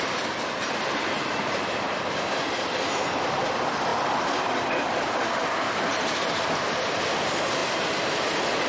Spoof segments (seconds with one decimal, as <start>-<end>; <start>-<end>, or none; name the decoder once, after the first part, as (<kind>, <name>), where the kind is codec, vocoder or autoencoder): 0.0-1.1 (vocoder, BigVGAN v2); 2.3-8.7